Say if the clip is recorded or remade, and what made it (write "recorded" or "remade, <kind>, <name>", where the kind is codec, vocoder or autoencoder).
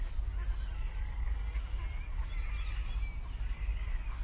recorded